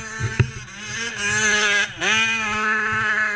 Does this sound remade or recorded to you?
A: recorded